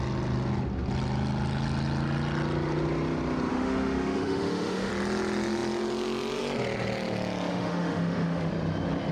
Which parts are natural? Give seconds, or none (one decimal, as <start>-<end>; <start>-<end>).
0.0-3.5; 4.9-7.5; 8.5-9.1